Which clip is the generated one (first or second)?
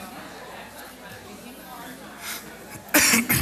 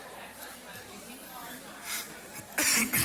second